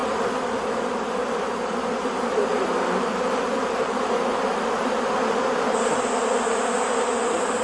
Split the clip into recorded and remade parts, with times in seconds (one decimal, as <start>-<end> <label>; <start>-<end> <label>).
0.0-4.1 remade; 4.1-7.6 recorded